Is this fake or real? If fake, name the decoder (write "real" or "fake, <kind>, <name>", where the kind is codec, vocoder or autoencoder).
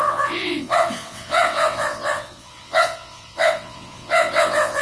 fake, vocoder, WaveNeXt